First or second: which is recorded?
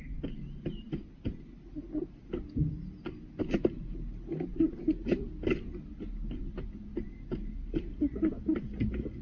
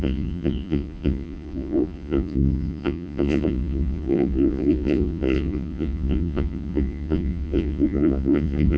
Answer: first